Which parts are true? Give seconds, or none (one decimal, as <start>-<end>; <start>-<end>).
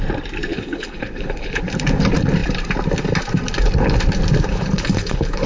0.0-0.5; 1.6-4.5